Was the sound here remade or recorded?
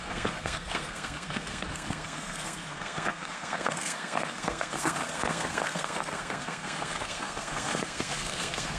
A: remade